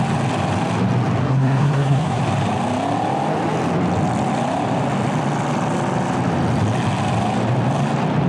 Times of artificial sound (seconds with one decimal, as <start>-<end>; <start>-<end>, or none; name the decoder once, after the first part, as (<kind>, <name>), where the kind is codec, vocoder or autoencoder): 1.2-2.2 (codec, SNAC)